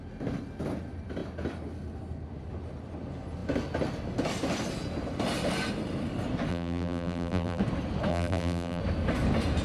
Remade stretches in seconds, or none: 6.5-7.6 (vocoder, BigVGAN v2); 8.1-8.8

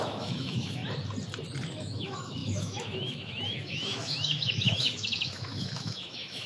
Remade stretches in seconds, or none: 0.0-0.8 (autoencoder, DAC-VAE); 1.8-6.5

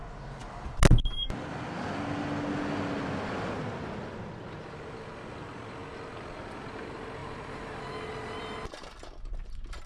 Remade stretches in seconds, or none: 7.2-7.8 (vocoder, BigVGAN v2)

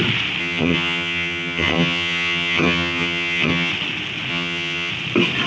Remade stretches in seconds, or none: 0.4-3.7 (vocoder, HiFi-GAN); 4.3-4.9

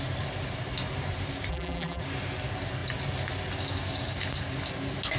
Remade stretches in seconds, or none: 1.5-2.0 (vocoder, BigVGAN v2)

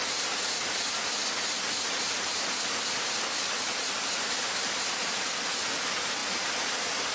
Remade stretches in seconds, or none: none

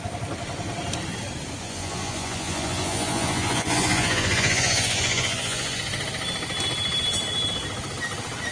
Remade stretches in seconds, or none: 1.6-5.8 (vocoder, Vocos)